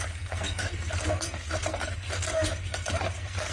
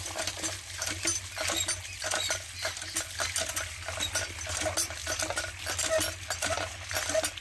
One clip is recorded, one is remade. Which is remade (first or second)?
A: first